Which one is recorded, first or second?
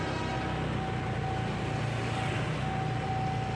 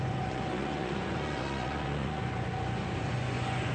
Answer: first